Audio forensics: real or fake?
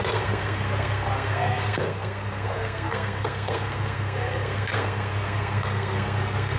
fake